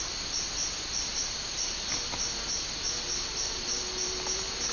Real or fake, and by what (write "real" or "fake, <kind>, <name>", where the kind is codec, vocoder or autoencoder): real